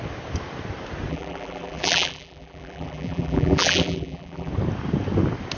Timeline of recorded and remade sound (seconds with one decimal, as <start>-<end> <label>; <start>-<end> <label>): 0.0-1.1 recorded; 1.1-4.5 remade; 4.5-5.6 recorded